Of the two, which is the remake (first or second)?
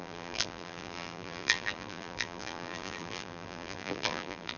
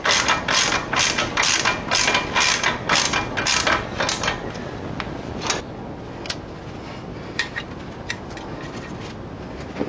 first